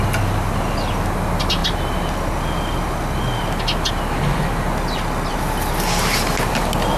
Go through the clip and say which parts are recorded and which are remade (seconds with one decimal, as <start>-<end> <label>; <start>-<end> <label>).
0.0-7.0 recorded